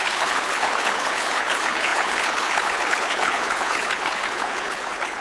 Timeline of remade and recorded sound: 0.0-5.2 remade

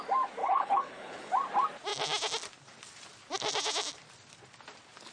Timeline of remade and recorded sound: 0.0-0.4 recorded; 0.4-1.3 remade; 1.3-5.1 recorded

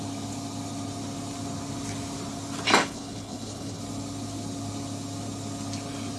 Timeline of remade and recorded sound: 0.0-2.8 recorded; 2.8-3.8 remade; 3.8-6.2 recorded

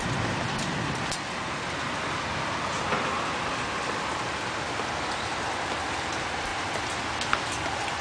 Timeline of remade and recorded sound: 0.0-8.0 recorded